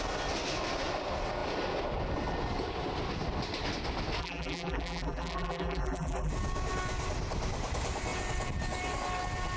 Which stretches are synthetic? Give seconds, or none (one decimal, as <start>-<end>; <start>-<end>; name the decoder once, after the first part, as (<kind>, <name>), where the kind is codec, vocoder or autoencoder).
4.2-6.3 (vocoder, BigVGAN v2)